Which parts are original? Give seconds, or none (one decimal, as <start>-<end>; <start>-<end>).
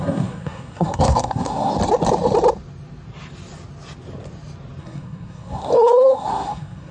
1.7-4.8